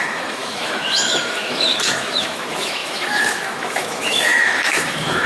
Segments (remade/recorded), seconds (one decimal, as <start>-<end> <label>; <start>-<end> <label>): 0.0-5.3 remade